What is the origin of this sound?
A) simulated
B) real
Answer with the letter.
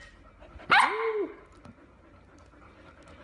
B